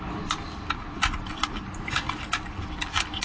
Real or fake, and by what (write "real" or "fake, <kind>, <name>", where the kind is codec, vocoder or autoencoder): real